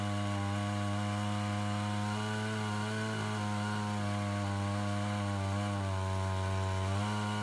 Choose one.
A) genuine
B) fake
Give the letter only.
A